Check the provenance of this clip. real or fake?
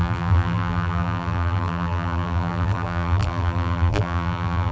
fake